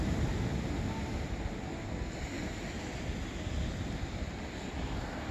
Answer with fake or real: real